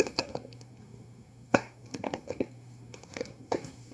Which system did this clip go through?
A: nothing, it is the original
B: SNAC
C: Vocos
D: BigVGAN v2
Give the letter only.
B